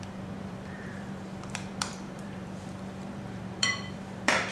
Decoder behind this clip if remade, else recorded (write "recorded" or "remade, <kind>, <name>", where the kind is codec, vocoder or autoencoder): remade, vocoder, BigVGAN v2